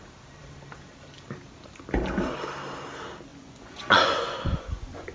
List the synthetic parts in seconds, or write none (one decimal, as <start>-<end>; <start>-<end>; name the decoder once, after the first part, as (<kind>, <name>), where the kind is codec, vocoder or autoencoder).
3.3-5.1 (vocoder, Vocos)